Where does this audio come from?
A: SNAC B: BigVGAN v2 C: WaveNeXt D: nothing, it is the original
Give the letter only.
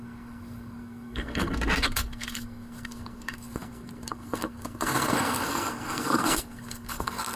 A